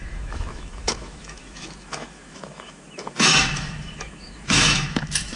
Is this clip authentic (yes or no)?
no